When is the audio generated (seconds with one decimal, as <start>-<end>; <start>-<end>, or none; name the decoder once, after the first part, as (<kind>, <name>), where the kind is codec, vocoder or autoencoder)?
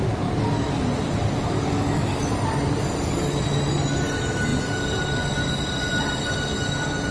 1.7-2.3 (autoencoder, DAC-VAE)